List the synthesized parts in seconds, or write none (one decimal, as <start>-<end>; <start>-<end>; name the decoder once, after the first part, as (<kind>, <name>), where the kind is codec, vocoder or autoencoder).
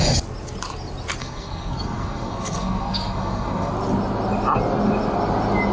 1.2-3.7 (codec, SNAC)